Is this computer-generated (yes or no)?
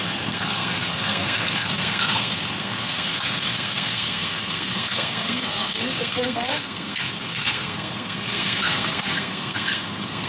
yes